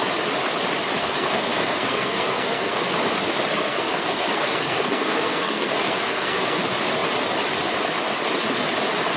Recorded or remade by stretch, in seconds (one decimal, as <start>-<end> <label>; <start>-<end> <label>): 0.0-1.0 recorded; 1.0-2.9 remade; 2.9-3.5 recorded; 3.5-6.6 remade; 6.6-9.2 recorded